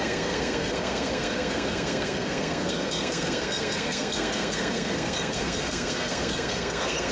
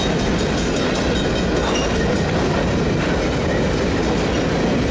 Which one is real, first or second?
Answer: second